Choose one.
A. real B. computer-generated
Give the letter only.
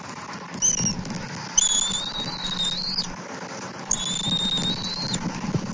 A